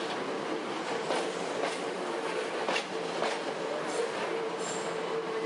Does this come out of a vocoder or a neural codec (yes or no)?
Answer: no